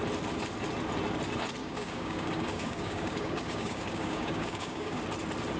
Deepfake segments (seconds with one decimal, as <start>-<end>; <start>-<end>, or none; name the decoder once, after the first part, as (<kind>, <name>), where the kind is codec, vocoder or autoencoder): 1.6-5.0 (codec, DAC)